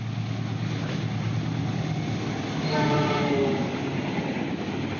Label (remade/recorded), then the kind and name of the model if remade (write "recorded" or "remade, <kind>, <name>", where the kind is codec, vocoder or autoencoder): recorded